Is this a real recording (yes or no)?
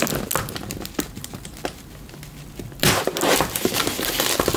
yes